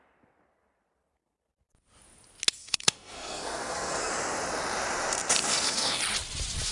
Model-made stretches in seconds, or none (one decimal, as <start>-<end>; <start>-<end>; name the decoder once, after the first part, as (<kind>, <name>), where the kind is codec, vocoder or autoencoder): 2.6-4.1 (codec, SNAC); 5.5-6.0